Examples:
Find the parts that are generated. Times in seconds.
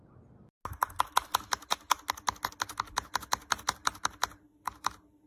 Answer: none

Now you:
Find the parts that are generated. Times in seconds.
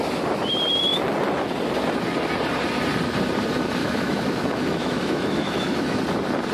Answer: 3.8-6.0 (autoencoder, DAC-VAE)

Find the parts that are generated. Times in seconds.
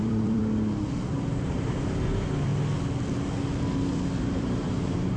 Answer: 0.0-0.4 (vocoder, BigVGAN v2); 1.3-2.5; 4.2-5.2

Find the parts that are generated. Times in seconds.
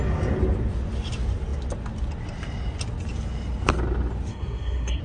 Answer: 4.3-5.0 (codec, SNAC)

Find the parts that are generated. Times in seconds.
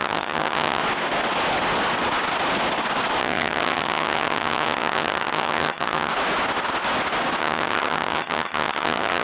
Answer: 0.0-0.8 (vocoder, HiFi-GAN); 3.2-6.1; 7.4-9.2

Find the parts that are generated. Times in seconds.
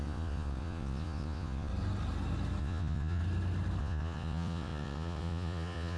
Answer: 0.0-1.7 (vocoder, Vocos); 2.6-3.2; 3.8-6.0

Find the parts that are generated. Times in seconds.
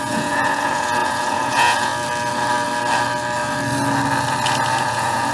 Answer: 0.0-1.9 (vocoder, Vocos); 4.8-5.3